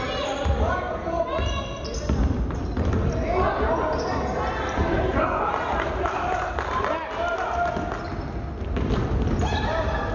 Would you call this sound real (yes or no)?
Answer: yes